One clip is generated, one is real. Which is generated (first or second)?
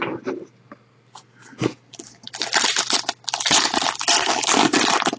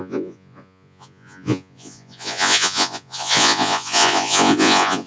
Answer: second